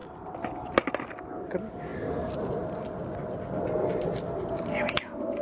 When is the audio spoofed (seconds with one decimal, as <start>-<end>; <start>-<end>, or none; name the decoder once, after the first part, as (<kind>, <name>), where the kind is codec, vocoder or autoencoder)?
none